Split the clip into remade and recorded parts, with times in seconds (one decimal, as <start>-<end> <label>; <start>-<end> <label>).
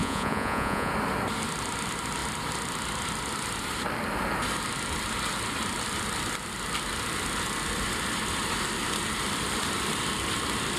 0.0-0.9 remade; 0.9-10.8 recorded